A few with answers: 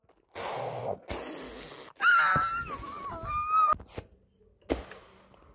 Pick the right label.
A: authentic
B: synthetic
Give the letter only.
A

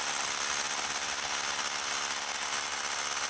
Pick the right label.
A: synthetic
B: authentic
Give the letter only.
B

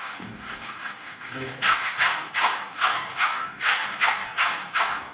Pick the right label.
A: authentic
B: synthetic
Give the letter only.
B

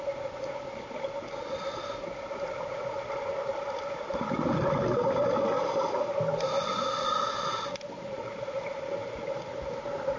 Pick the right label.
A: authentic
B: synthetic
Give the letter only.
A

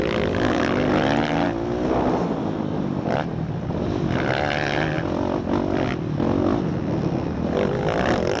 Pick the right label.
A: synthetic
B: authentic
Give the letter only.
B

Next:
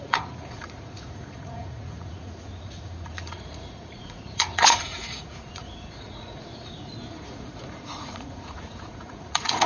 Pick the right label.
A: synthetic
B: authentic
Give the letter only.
A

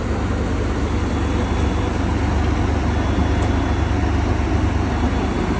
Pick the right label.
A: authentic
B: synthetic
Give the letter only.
A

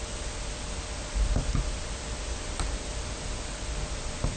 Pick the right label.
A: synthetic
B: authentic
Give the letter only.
B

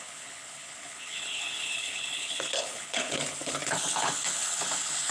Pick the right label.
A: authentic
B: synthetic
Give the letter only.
B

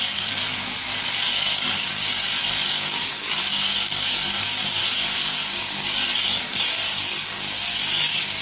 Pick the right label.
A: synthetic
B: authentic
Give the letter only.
A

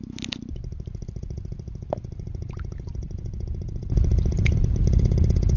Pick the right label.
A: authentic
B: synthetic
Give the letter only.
A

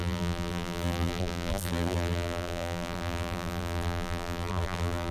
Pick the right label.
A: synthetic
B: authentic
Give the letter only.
A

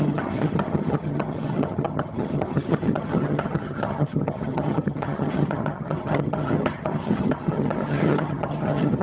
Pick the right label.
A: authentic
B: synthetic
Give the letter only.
B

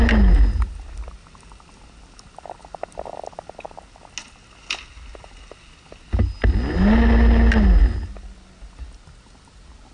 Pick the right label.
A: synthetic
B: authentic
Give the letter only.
B